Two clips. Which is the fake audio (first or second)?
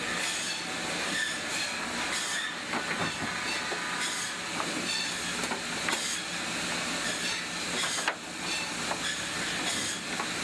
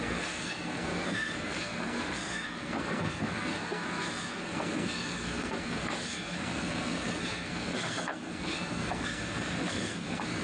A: second